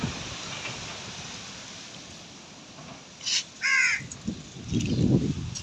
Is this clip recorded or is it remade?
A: recorded